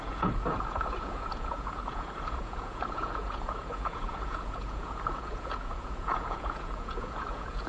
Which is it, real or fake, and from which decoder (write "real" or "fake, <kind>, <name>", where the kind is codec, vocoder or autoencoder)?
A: fake, vocoder, Vocos